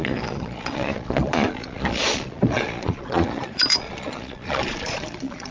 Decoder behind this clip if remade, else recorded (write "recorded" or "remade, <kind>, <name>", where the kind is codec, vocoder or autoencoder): remade, vocoder, Vocos